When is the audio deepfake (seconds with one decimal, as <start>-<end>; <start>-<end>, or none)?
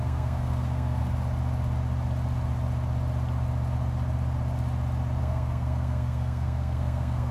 0.0-1.0; 5.2-7.3